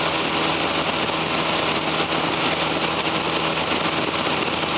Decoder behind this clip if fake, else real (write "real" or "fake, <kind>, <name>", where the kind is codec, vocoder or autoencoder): real